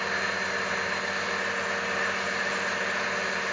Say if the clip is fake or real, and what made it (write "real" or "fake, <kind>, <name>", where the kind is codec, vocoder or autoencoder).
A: real